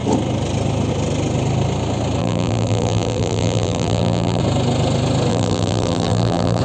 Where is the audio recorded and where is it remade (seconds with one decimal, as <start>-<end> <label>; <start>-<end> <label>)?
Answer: 0.0-2.2 recorded; 2.2-4.4 remade; 4.4-5.3 recorded; 5.3-6.6 remade